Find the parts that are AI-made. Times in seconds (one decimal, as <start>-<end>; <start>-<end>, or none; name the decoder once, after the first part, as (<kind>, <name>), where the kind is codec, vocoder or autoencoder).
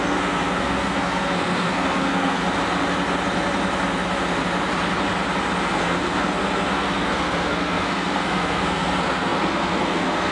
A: 0.0-2.4 (codec, SNAC); 5.7-10.3